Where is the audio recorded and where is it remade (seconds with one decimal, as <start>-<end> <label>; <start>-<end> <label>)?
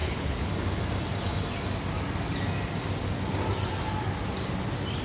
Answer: 0.0-0.5 remade; 0.5-5.0 recorded